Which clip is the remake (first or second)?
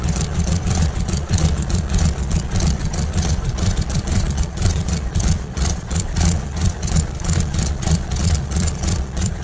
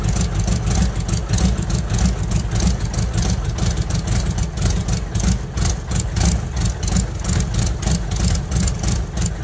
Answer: first